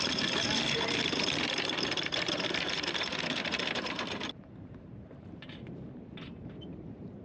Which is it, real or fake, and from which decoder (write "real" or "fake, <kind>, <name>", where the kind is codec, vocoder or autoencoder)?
fake, vocoder, BigVGAN v2